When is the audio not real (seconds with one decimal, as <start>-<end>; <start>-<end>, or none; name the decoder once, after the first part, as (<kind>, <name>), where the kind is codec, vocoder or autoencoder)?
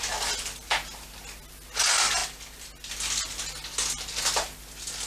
none